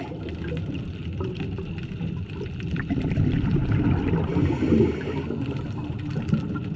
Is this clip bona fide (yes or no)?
yes